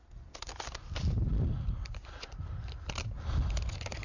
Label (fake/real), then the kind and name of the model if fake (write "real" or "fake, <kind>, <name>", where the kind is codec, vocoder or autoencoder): real